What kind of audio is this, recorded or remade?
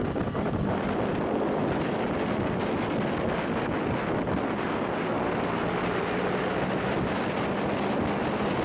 recorded